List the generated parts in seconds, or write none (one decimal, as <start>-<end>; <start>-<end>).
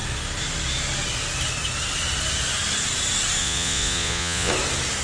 3.4-4.5